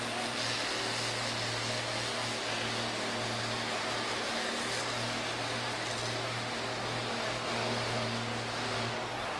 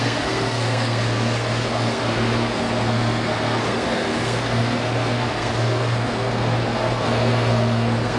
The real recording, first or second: first